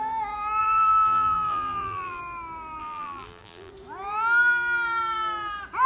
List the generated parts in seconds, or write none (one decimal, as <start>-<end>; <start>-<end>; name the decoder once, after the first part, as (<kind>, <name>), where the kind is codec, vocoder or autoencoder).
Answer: 0.6-2.2 (vocoder, BigVGAN v2); 2.8-3.7